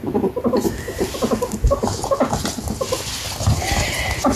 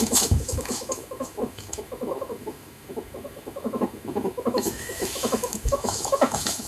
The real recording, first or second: first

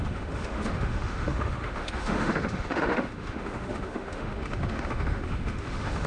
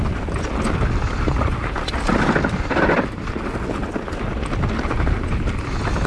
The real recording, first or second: second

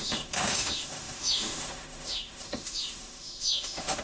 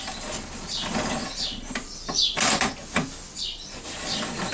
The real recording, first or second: second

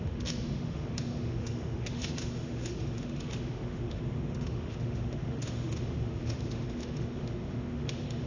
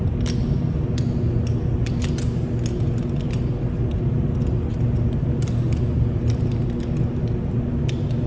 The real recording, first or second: second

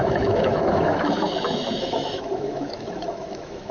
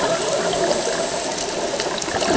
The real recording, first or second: second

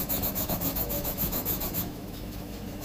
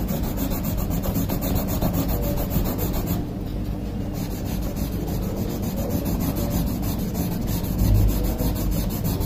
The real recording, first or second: second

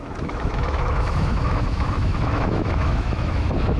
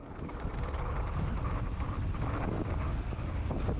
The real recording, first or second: second